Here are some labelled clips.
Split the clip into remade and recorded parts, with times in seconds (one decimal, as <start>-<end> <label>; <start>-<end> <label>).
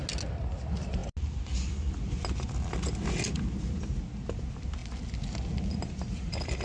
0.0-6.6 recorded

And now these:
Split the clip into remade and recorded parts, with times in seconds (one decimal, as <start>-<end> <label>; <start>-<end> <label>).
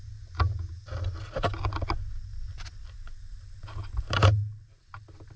0.0-5.4 recorded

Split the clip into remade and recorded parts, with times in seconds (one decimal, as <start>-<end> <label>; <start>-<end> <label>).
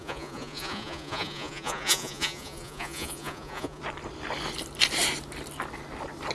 0.0-3.8 remade; 3.8-6.3 recorded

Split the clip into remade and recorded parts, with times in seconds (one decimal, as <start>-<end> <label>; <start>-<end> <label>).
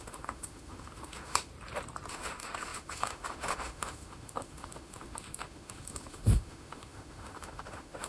0.0-1.5 remade; 1.5-2.1 recorded; 2.1-8.1 remade